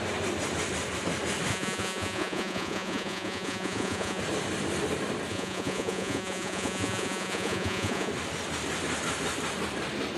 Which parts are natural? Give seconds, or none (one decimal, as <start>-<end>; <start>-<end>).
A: 0.0-1.5; 4.2-5.3; 8.1-10.2